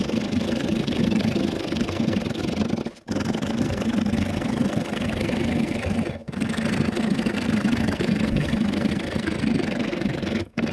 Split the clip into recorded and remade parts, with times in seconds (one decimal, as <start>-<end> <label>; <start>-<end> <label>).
0.0-2.4 remade; 2.4-3.1 recorded; 3.1-10.7 remade